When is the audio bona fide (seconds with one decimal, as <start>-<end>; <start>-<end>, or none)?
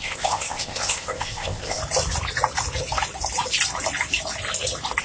1.8-5.0